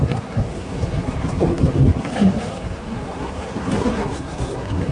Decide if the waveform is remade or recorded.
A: remade